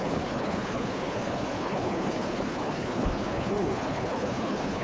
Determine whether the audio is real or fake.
fake